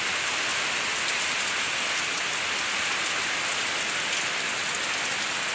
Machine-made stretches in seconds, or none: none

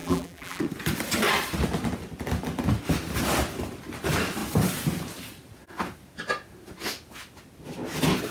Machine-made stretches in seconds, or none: 0.0-0.6

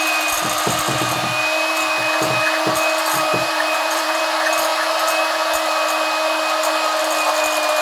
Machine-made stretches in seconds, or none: 3.3-4.2